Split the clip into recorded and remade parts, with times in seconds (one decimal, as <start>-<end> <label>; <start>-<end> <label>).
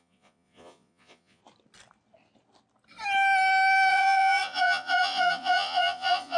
0.0-1.4 remade; 1.4-3.9 recorded; 3.9-6.4 remade